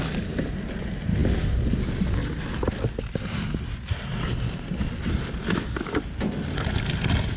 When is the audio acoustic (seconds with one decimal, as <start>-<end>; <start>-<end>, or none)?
0.0-7.4